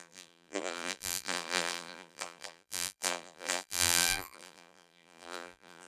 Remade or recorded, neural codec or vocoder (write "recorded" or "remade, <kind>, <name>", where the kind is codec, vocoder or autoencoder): remade, vocoder, BigVGAN v2